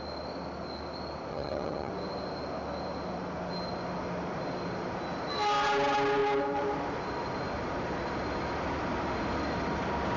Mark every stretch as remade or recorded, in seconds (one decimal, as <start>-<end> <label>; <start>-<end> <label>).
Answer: 0.0-1.3 recorded; 1.3-1.9 remade; 1.9-10.2 recorded